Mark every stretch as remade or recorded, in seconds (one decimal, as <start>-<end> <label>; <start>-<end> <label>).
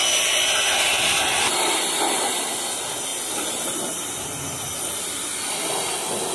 0.0-6.3 recorded